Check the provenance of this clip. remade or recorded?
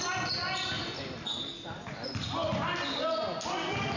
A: recorded